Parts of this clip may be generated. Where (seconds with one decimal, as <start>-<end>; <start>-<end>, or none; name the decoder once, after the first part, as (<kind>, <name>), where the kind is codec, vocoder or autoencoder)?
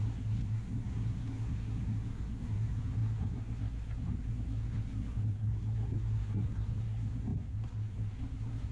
0.0-8.7 (codec, SNAC)